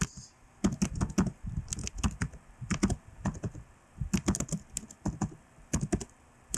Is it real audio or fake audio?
real